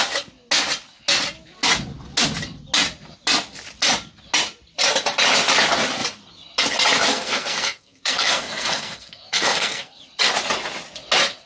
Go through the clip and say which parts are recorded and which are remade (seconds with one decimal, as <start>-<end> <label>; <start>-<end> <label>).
0.0-7.1 recorded; 7.1-10.0 remade; 10.0-11.5 recorded